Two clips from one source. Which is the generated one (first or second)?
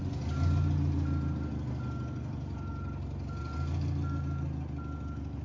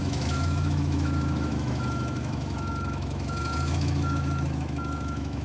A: second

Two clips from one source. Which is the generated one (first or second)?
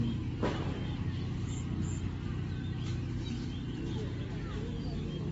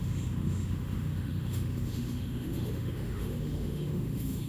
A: second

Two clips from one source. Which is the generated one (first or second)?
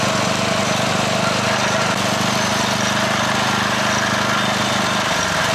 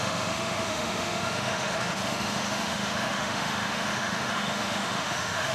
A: second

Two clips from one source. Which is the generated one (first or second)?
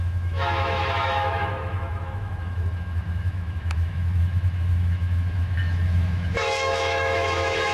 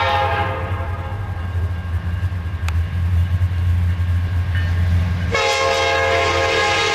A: first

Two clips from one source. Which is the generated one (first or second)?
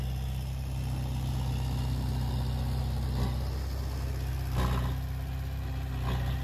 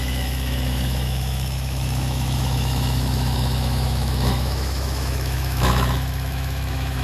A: second